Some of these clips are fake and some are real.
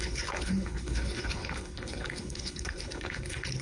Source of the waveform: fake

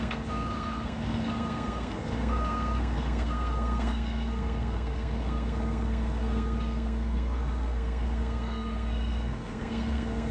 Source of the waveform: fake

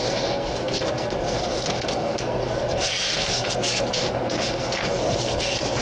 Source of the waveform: fake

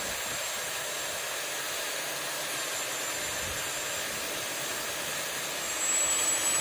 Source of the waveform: real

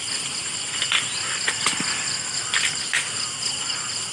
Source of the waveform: real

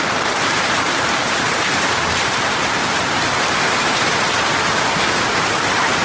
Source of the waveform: fake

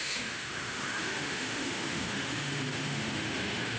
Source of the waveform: fake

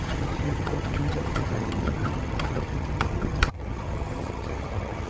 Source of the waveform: fake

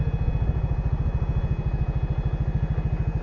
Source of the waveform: real